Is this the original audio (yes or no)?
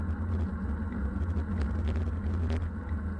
yes